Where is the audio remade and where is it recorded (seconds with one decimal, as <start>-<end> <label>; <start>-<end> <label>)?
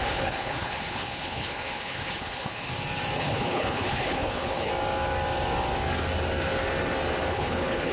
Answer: 0.0-2.7 remade; 2.7-3.2 recorded; 3.2-4.7 remade; 4.7-7.3 recorded; 7.3-7.9 remade